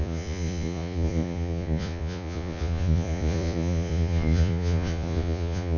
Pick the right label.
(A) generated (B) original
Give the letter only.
A